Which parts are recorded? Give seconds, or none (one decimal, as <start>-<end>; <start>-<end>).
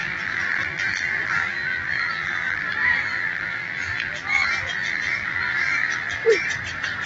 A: 6.2-7.1